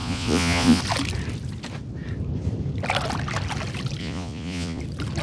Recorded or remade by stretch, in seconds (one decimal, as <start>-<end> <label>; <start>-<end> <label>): 0.0-0.8 remade; 0.8-4.0 recorded; 4.0-4.8 remade; 4.8-5.2 recorded